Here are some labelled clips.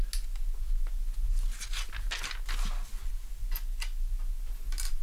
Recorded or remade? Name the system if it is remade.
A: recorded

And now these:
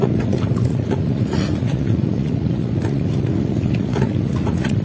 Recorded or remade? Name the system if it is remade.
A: remade, vocoder, Vocos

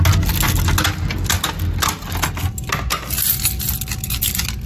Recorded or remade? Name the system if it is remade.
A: recorded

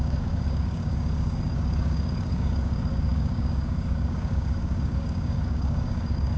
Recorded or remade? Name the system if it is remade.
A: remade, codec, DAC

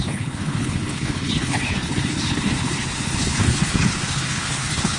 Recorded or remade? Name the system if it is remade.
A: remade, codec, HILCodec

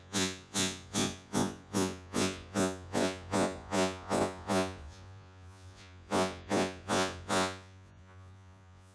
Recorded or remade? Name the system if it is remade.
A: remade, vocoder, Vocos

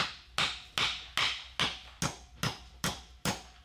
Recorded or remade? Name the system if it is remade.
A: recorded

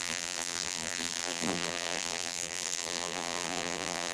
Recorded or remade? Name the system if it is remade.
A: remade, vocoder, BigVGAN v2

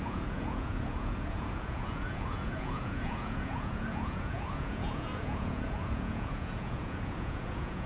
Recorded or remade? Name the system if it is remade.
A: remade, vocoder, Vocos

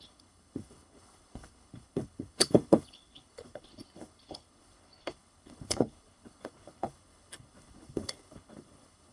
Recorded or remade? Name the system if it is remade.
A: remade, codec, HILCodec